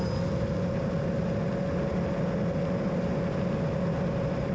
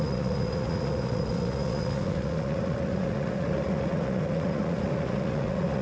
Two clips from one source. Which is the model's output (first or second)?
second